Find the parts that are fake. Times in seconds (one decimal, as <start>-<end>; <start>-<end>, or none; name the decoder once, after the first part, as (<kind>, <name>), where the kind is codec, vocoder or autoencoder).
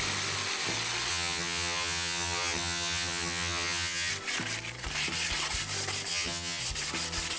1.1-4.1 (vocoder, HiFi-GAN); 6.1-6.6